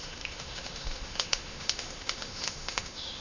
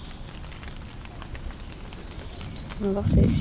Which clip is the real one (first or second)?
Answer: second